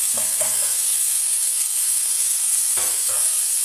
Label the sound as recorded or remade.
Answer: remade